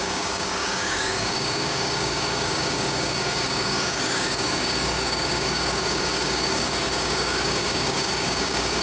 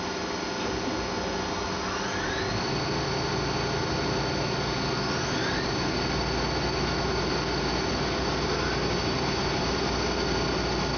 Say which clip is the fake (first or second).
first